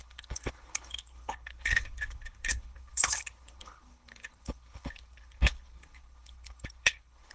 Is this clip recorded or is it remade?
remade